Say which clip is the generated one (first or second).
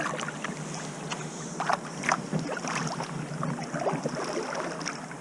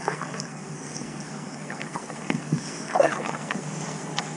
second